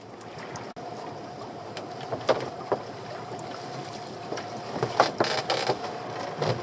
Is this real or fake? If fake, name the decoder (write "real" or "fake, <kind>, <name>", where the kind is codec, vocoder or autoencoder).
real